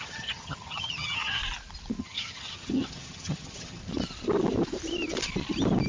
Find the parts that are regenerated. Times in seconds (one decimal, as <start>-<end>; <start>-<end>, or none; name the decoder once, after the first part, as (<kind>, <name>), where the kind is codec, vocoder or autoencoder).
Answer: 0.0-1.4 (vocoder, HiFi-GAN); 2.0-3.8